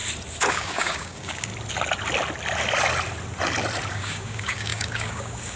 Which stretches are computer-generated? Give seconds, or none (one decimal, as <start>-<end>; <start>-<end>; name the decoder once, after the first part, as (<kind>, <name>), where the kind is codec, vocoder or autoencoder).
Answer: 0.5-1.5 (codec, DAC); 3.9-5.6